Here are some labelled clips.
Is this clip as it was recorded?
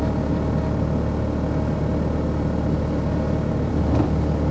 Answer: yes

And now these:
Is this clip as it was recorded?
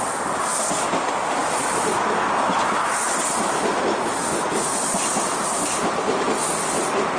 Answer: yes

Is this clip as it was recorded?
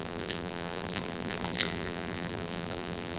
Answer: no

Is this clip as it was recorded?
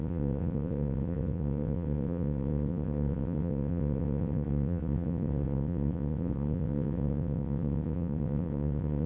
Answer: no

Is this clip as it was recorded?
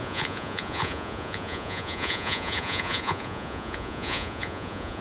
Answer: no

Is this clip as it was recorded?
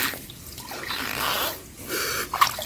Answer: yes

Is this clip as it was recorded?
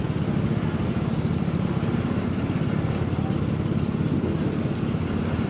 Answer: yes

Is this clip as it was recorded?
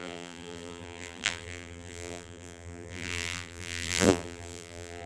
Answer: no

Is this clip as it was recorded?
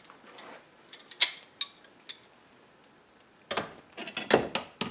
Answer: yes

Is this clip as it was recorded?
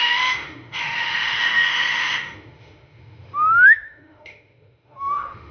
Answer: no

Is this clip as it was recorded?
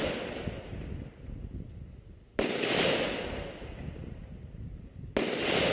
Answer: yes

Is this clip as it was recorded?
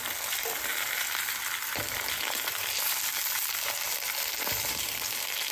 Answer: yes